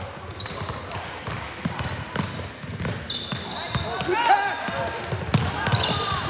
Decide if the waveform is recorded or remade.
recorded